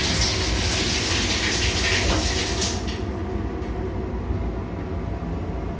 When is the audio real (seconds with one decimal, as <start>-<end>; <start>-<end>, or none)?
0.0-5.8